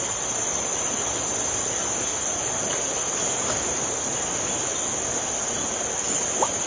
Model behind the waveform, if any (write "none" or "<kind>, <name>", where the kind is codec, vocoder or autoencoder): none